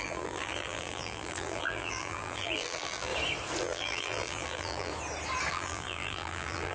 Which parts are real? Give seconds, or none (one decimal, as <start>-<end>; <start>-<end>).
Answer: 3.1-3.6; 4.9-5.5